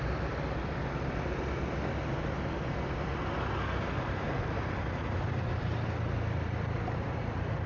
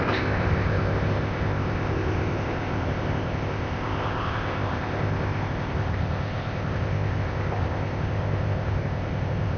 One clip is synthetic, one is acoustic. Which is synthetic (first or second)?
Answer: second